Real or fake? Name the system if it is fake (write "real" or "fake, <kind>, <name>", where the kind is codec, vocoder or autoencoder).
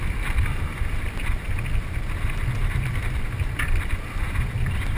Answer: real